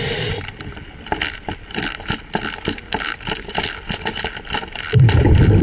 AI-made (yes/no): no